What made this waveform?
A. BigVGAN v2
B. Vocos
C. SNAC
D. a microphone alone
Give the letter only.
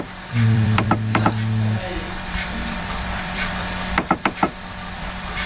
A